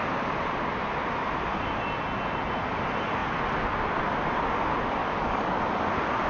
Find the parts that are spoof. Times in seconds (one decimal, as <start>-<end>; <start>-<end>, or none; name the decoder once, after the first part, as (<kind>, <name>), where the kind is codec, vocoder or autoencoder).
5.0-5.6 (codec, DAC)